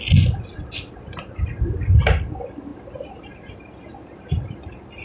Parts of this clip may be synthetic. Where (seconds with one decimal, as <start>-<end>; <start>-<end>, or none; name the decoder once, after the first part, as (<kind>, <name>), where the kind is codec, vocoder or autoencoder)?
0.5-1.2 (vocoder, BigVGAN v2); 2.7-5.0